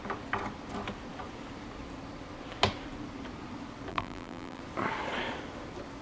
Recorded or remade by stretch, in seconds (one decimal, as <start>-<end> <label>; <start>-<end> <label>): 0.0-3.9 recorded; 3.9-4.6 remade; 4.6-6.0 recorded